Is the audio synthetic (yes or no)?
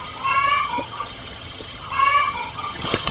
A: yes